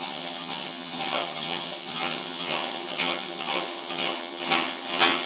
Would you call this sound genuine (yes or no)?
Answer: no